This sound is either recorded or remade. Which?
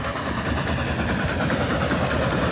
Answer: recorded